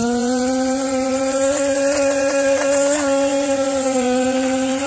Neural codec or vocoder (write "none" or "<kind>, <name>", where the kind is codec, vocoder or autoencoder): vocoder, Vocos